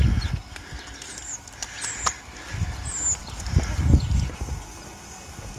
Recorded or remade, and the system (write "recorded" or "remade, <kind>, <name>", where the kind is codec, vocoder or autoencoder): recorded